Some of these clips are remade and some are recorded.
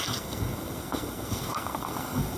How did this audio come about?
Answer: remade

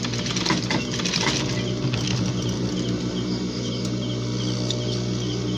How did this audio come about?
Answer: recorded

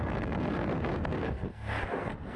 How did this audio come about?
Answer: remade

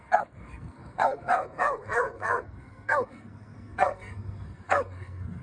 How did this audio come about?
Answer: remade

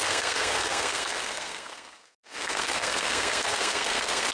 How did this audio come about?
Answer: remade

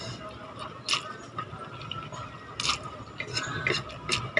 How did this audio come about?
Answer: recorded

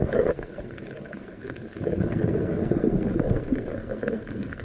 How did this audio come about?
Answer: remade